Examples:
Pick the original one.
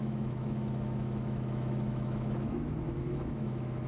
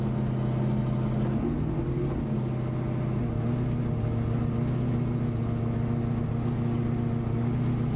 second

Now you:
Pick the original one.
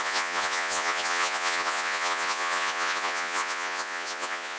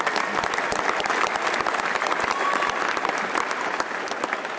second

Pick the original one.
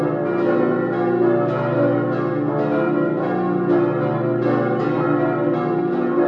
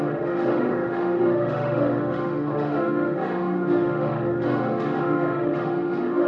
first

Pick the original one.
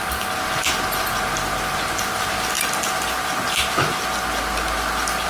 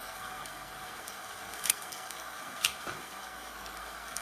first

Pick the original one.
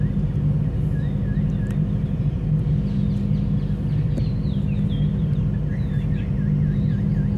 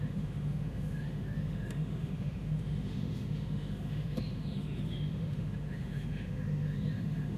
first